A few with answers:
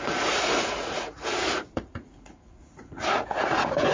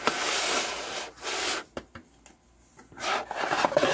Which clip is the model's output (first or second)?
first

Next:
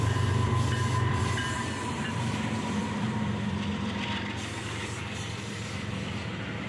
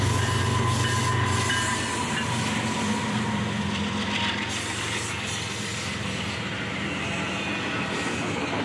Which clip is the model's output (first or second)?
first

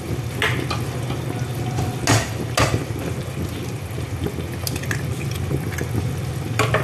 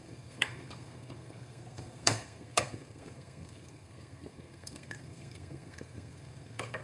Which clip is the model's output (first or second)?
second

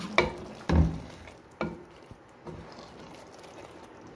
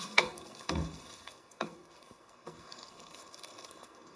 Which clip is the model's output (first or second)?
second